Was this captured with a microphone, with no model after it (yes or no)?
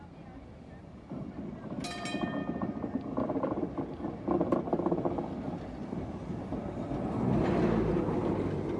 yes